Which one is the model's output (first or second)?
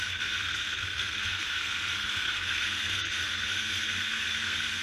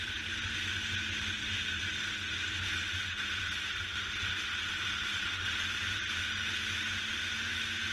first